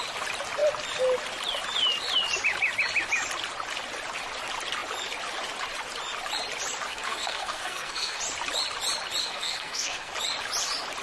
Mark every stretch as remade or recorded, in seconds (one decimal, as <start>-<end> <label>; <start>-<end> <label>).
0.0-6.9 recorded; 6.9-8.2 remade; 8.2-9.2 recorded; 9.2-10.1 remade; 10.1-11.0 recorded